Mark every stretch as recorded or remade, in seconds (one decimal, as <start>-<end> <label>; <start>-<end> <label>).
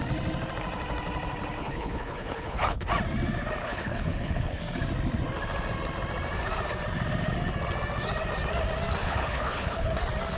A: 0.0-1.6 recorded; 1.6-2.9 remade; 2.9-3.6 recorded; 3.6-4.6 remade; 4.6-9.0 recorded; 9.0-10.0 remade; 10.0-10.4 recorded